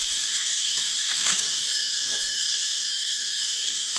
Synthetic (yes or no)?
yes